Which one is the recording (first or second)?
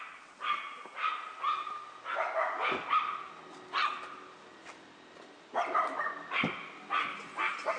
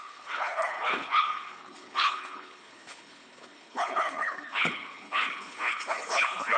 first